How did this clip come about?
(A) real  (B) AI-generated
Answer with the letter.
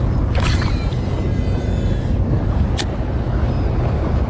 A